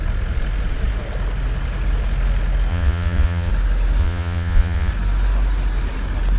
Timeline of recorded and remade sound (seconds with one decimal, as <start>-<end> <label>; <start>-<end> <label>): 0.0-2.7 recorded; 2.7-3.5 remade; 3.5-4.0 recorded; 4.0-4.9 remade; 4.9-6.4 recorded